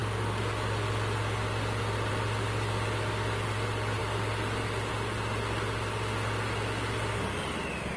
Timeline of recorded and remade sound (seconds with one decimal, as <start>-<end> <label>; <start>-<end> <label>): 0.0-8.0 recorded